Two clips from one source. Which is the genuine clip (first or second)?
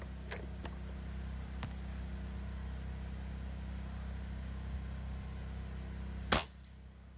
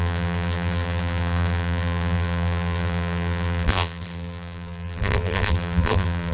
first